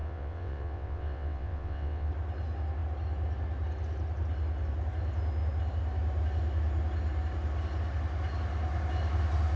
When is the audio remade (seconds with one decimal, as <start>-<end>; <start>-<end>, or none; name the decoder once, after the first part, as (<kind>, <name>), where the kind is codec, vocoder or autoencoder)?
0.0-2.1 (vocoder, WaveNeXt)